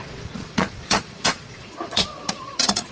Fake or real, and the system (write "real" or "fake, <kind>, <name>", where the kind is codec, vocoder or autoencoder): fake, vocoder, Vocos